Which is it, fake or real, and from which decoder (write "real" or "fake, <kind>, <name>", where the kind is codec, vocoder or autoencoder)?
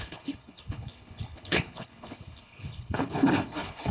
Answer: fake, codec, HILCodec